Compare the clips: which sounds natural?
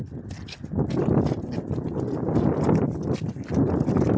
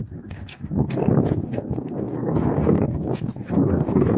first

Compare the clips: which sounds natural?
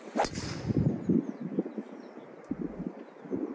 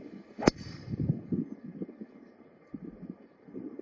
first